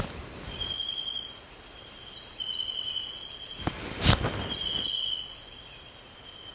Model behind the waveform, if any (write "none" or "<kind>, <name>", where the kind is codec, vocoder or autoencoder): none